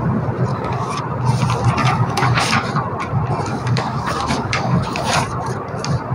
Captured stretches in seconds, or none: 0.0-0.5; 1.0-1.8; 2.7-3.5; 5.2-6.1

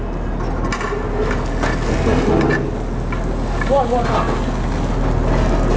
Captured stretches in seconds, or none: 0.0-5.8

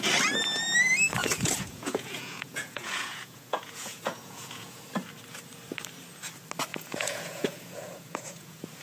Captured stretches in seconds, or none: 0.0-1.2; 4.8-6.7